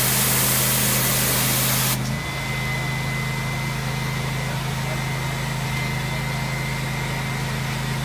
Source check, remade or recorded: recorded